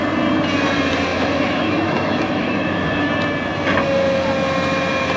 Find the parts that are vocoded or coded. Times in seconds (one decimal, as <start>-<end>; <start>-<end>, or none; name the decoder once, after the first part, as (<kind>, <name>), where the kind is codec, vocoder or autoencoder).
1.1-3.1 (autoencoder, DAC-VAE)